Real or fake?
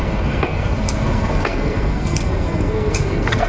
fake